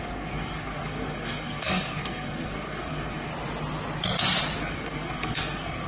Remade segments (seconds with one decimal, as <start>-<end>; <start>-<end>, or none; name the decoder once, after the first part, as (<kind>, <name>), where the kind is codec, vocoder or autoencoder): 0.0-3.3 (codec, SNAC); 4.6-5.9